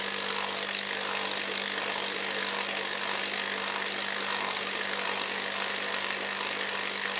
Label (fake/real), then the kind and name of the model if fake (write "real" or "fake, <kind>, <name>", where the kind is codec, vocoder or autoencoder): real